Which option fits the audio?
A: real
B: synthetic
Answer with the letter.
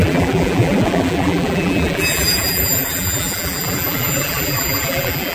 B